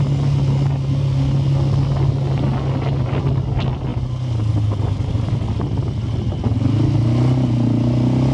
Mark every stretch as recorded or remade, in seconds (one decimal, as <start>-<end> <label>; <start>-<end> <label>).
0.0-8.3 recorded